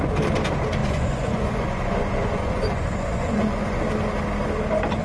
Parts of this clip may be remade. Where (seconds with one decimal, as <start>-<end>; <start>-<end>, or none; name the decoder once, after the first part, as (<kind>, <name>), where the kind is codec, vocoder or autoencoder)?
0.8-3.8 (vocoder, Vocos)